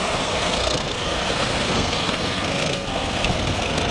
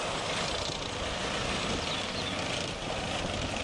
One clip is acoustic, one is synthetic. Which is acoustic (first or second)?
second